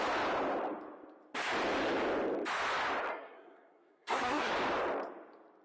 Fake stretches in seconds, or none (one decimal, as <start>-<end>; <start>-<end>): 3.1-4.5